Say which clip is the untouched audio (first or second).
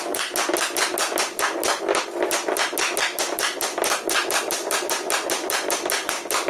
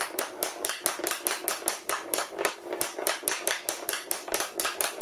first